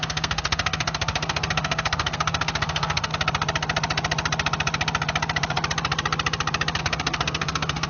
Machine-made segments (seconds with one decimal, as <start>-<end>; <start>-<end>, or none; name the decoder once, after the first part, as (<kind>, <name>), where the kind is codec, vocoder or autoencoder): 0.0-3.1 (codec, SNAC); 6.8-7.9